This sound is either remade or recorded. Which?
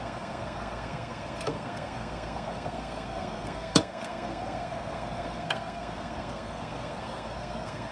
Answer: remade